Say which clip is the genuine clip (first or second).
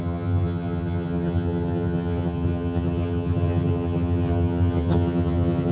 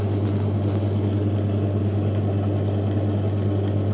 second